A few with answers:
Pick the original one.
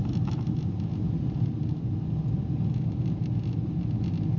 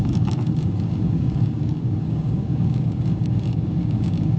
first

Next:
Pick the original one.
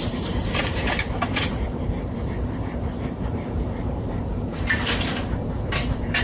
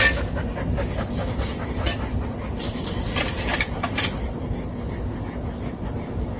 second